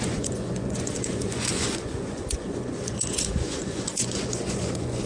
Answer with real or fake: fake